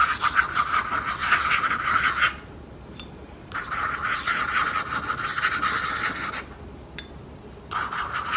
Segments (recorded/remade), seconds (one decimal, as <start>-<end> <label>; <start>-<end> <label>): 0.0-1.2 recorded; 1.2-1.7 remade; 1.7-3.2 recorded; 3.2-3.8 remade; 3.8-8.4 recorded